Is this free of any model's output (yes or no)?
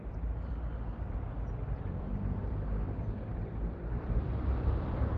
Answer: no